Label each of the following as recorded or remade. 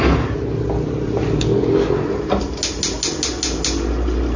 recorded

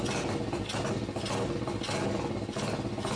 recorded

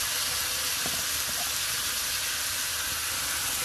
recorded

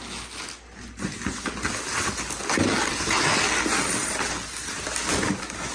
recorded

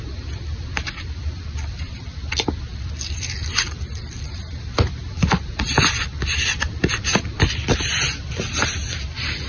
remade